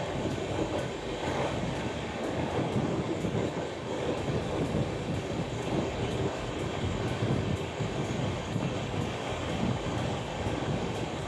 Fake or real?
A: fake